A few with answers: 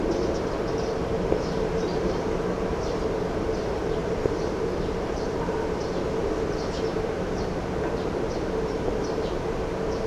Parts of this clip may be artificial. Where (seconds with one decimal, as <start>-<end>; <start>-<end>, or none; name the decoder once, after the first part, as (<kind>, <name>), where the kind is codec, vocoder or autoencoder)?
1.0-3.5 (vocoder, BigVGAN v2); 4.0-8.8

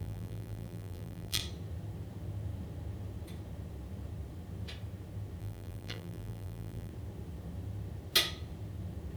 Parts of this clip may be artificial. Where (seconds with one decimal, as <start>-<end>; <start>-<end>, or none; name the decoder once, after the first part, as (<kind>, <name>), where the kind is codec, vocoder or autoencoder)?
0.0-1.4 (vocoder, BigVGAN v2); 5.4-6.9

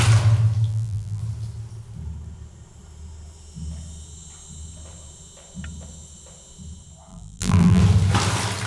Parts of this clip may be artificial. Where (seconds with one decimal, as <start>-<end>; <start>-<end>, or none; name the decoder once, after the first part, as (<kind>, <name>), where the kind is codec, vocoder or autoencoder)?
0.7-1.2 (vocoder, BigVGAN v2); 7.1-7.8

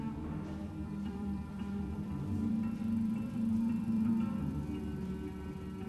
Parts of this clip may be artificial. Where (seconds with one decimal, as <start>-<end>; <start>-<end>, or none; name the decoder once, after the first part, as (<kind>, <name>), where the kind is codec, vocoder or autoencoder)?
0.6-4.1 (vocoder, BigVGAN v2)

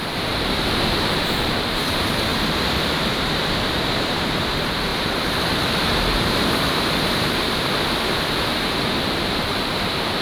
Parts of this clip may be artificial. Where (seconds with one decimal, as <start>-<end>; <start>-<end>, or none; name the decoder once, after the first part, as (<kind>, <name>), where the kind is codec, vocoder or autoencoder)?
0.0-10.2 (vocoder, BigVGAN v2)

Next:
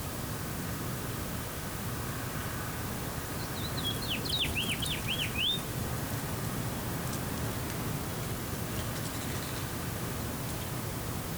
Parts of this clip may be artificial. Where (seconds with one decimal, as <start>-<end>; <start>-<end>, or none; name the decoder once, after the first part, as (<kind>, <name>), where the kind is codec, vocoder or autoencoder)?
none

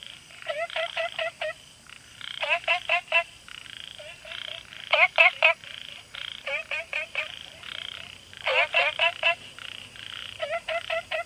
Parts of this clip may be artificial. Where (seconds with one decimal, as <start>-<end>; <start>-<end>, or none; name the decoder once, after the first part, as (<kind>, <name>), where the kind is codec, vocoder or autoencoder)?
0.0-11.3 (vocoder, BigVGAN v2)